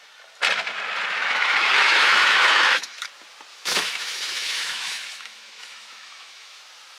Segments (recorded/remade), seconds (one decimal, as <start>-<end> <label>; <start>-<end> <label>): 0.0-1.2 recorded; 1.2-3.1 remade; 3.1-3.5 recorded; 3.5-6.6 remade; 6.6-7.0 recorded